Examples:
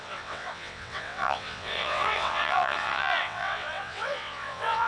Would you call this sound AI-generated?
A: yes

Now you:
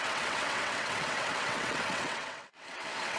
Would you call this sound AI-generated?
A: yes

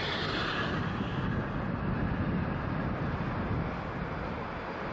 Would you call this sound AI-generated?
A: no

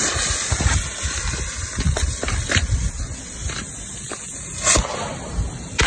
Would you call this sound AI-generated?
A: no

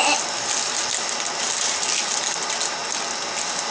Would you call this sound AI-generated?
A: no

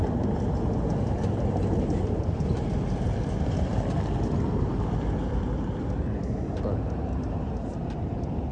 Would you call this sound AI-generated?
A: no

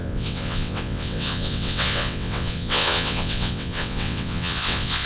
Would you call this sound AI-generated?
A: yes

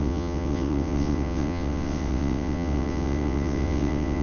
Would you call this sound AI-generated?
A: yes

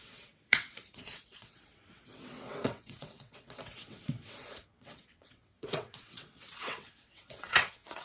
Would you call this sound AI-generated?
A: yes